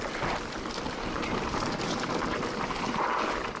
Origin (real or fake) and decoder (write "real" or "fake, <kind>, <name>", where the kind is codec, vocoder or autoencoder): real